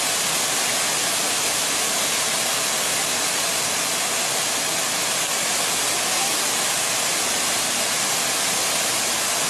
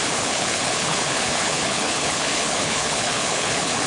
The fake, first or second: second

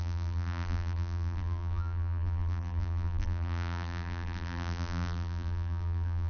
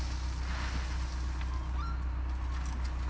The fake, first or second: first